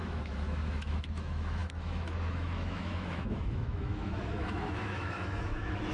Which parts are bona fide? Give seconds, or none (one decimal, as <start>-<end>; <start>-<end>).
none